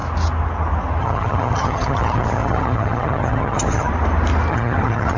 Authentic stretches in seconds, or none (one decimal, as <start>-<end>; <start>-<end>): 0.0-1.0; 3.9-4.5